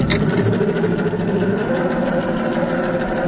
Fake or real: real